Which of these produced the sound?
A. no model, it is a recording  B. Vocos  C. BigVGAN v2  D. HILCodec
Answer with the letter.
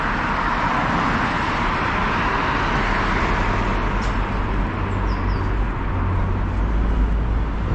A